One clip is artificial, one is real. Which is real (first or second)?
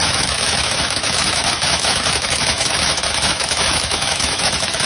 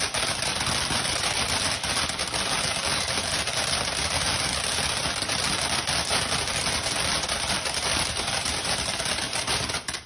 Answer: second